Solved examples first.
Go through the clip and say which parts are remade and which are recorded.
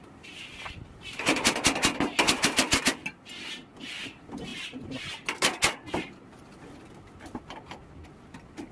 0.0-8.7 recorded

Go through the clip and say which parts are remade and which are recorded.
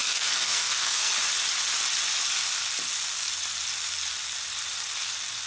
0.0-1.1 remade; 1.1-5.5 recorded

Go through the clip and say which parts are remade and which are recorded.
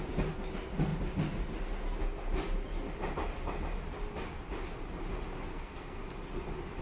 0.0-5.5 recorded; 5.5-6.0 remade; 6.0-6.8 recorded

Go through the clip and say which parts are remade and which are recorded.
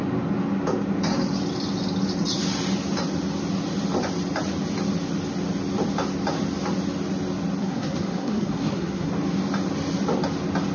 0.0-7.6 recorded; 7.6-9.1 remade; 9.1-10.7 recorded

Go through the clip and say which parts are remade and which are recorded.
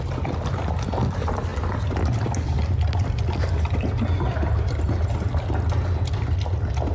0.0-6.9 recorded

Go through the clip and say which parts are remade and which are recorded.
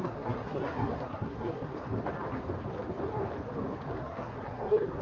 0.0-1.7 remade; 1.7-4.0 recorded; 4.0-5.0 remade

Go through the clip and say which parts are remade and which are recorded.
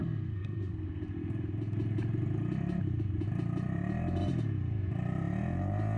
0.0-1.0 remade; 1.0-6.0 recorded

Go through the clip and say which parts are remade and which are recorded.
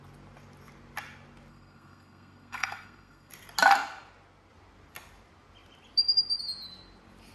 0.0-1.5 recorded; 1.5-3.3 remade; 3.3-7.3 recorded